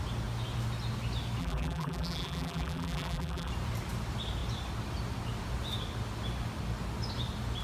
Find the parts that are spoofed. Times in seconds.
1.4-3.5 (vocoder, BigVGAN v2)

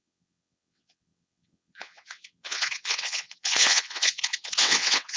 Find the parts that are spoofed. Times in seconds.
0.0-5.2 (vocoder, WaveNeXt)

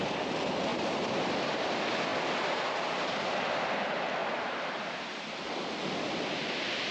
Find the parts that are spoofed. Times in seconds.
0.7-1.6 (vocoder, BigVGAN v2); 4.2-5.4

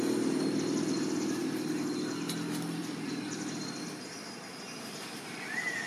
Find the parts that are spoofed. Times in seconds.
0.0-5.9 (vocoder, BigVGAN v2)

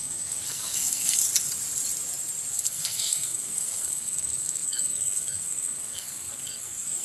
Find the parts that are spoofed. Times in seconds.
0.0-1.2 (codec, SNAC); 2.5-7.0

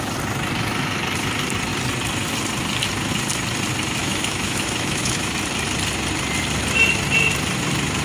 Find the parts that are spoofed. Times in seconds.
4.0-5.3 (autoencoder, DAC-VAE)

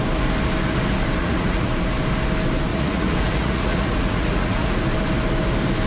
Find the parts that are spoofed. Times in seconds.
1.2-1.7 (vocoder, Vocos); 2.7-4.8

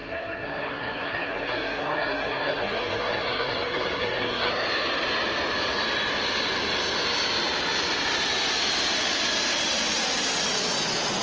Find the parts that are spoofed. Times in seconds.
0.0-4.5 (codec, SNAC)